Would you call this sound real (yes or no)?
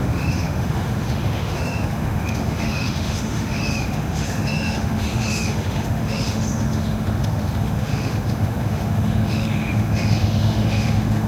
no